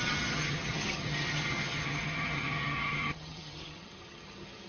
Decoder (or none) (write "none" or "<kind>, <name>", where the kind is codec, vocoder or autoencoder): vocoder, HiFi-GAN